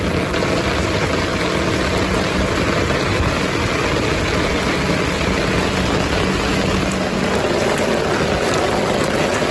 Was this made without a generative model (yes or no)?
yes